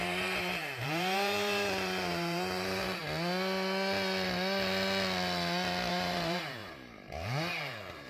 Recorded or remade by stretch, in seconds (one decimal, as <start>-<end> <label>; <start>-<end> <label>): 0.0-3.0 remade; 3.0-5.9 recorded; 5.9-8.1 remade